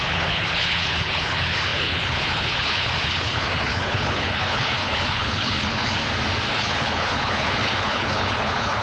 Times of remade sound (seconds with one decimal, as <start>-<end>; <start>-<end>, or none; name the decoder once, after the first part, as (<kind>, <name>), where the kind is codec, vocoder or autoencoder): 0.0-6.0 (codec, HILCodec); 6.5-8.8